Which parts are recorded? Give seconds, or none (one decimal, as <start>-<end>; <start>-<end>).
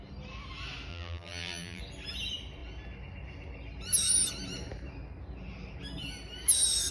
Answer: 0.0-0.9; 1.8-6.9